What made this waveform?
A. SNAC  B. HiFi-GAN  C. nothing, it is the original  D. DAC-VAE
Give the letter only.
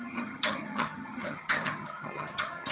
B